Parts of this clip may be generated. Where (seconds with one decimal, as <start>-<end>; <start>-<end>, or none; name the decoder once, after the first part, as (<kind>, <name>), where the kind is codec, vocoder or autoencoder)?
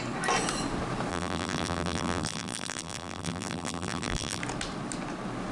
1.1-4.4 (vocoder, BigVGAN v2)